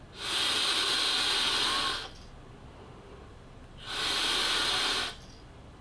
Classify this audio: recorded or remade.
recorded